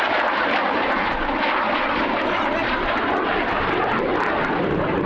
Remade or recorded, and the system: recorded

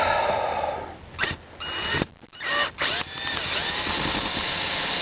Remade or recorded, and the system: recorded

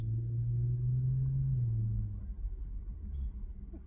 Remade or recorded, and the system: recorded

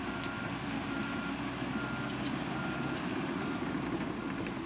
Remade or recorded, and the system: recorded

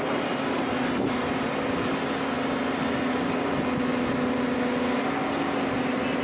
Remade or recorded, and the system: recorded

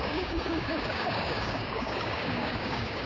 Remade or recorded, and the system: remade, codec, DAC